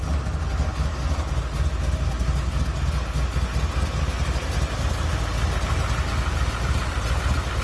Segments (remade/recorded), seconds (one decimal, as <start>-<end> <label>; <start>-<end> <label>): 0.0-7.6 recorded